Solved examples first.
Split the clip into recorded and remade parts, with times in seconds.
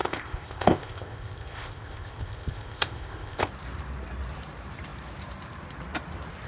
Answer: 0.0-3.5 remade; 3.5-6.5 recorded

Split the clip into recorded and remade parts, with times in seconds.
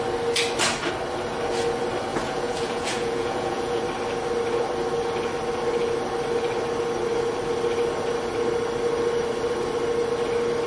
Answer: 0.0-2.1 recorded; 2.1-3.8 remade; 3.8-10.7 recorded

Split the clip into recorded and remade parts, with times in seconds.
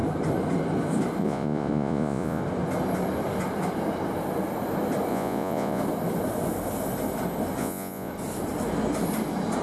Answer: 0.0-1.2 recorded; 1.2-2.4 remade; 2.4-5.1 recorded; 5.1-5.8 remade; 5.8-7.6 recorded; 7.6-8.1 remade; 8.1-9.6 recorded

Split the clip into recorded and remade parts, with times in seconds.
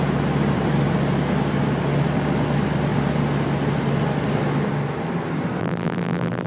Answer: 0.0-5.6 recorded; 5.6-6.5 remade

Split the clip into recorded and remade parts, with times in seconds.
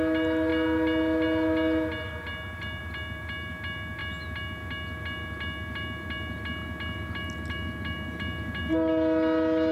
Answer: 0.0-9.7 recorded